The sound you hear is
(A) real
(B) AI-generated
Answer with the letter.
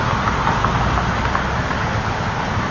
A